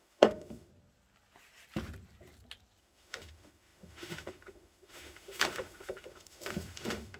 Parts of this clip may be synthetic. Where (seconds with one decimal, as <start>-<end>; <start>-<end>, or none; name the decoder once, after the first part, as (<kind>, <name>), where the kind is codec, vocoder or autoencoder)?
0.0-0.7 (autoencoder, DAC-VAE); 2.8-7.2